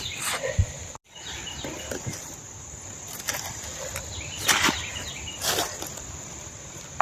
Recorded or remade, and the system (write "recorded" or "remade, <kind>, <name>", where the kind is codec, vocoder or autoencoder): remade, vocoder, BigVGAN v2